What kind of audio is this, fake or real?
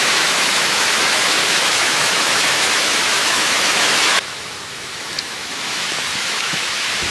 fake